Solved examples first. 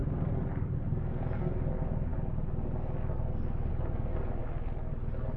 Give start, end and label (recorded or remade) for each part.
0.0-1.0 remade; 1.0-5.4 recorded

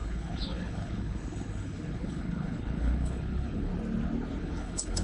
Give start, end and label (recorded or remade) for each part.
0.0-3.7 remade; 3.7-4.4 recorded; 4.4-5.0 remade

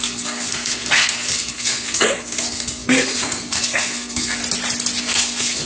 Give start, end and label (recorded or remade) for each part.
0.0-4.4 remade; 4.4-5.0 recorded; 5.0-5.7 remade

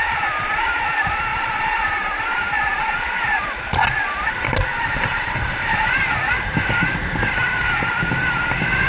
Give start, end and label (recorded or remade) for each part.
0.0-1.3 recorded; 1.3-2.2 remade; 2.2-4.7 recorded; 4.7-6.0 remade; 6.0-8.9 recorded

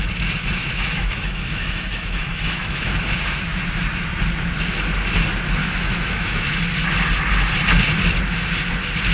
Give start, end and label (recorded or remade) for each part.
0.0-0.6 recorded; 0.6-3.0 remade; 3.0-5.6 recorded; 5.6-6.6 remade; 6.6-9.1 recorded

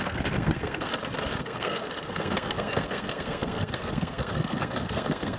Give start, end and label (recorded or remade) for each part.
0.0-0.9 remade; 0.9-1.4 recorded; 1.4-5.4 remade

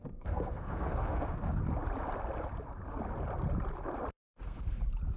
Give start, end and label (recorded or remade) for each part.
0.0-1.6 remade; 1.6-4.1 recorded; 4.1-4.8 remade; 4.8-5.2 recorded

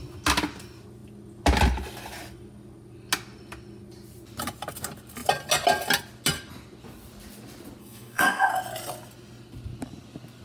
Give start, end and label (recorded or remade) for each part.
0.0-7.8 recorded; 7.8-8.5 remade; 8.5-10.4 recorded